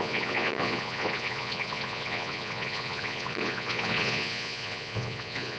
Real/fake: fake